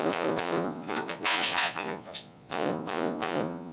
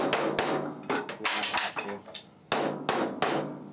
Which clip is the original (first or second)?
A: second